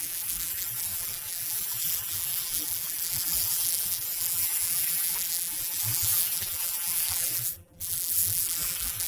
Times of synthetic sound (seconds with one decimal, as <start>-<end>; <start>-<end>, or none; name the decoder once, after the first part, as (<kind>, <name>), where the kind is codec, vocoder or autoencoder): 0.0-9.1 (vocoder, BigVGAN v2)